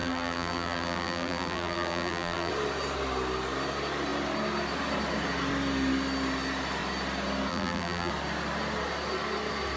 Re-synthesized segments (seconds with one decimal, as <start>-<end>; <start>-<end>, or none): 0.0-2.5; 7.5-8.1